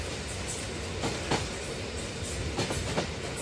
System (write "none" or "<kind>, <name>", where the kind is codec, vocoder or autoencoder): none